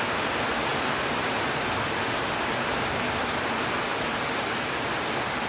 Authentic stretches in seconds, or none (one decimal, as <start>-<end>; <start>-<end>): 0.0-5.5